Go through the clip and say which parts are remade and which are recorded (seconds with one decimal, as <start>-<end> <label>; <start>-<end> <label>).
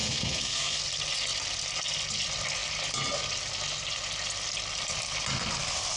0.0-0.8 remade; 0.8-6.0 recorded